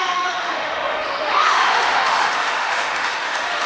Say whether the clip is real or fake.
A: fake